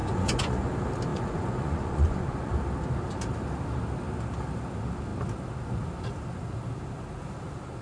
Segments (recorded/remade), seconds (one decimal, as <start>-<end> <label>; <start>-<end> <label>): 0.0-0.7 remade; 0.7-1.1 recorded; 1.1-2.5 remade; 2.5-7.8 recorded